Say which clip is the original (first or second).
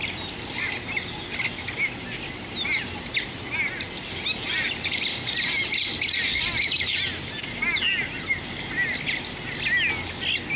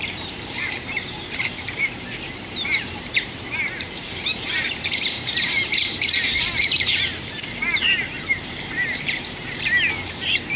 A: first